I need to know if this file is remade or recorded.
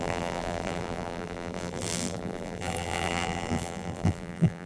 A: remade